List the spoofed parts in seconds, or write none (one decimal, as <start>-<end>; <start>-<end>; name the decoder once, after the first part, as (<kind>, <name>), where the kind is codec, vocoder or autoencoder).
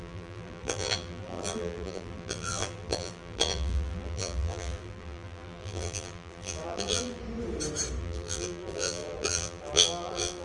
0.0-7.2 (vocoder, BigVGAN v2); 8.0-10.4